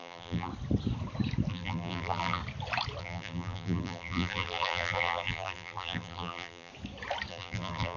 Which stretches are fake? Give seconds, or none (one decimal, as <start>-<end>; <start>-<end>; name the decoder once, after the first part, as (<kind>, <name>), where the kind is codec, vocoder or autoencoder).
0.0-0.5 (vocoder, BigVGAN v2); 1.5-2.4; 3.0-6.7; 7.3-8.0